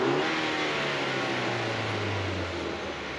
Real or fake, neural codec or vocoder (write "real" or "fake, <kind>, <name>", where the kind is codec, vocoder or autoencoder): real